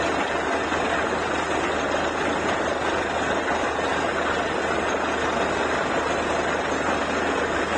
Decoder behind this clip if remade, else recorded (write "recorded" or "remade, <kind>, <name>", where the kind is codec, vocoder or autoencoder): recorded